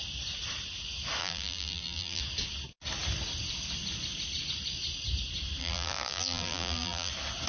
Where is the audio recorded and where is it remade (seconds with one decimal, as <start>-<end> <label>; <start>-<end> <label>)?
0.0-1.2 recorded; 1.2-2.2 remade; 2.2-5.6 recorded; 5.6-7.1 remade; 7.1-7.5 recorded